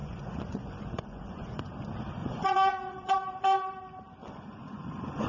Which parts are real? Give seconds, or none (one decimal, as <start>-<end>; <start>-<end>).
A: 1.7-2.2; 3.1-4.2